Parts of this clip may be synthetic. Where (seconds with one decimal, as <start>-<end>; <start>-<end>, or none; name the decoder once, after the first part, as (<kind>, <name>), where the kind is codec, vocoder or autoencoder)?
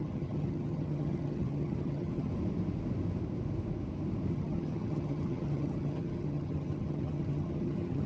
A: 0.0-2.3 (vocoder, HiFi-GAN); 4.3-8.1